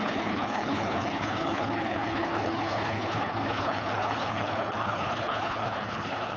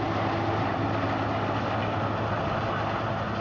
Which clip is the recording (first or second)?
second